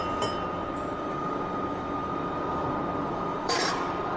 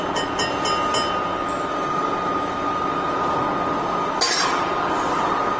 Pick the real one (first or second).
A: second